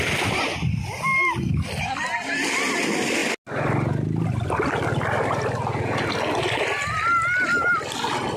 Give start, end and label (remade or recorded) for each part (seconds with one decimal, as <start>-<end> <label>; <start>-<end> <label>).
0.0-8.4 recorded